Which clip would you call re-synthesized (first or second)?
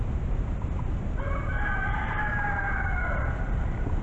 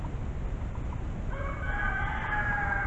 first